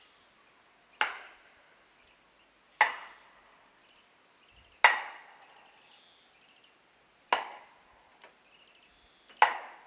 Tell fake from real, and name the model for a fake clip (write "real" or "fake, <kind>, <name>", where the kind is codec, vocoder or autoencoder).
real